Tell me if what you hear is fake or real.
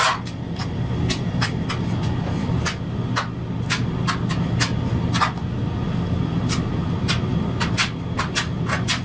real